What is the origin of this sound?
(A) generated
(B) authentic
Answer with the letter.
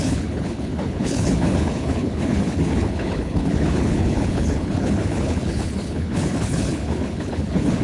A